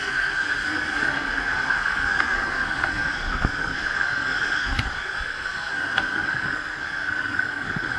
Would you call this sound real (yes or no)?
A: no